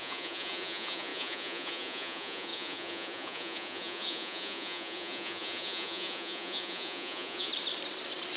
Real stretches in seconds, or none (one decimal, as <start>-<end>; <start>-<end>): 7.5-8.4